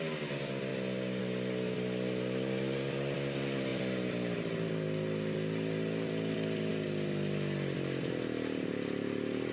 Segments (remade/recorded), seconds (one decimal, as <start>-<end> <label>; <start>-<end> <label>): 0.0-9.5 recorded